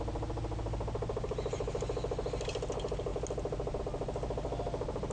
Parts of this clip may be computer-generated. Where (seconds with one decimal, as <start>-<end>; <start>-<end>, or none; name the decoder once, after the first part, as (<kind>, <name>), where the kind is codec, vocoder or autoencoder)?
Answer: none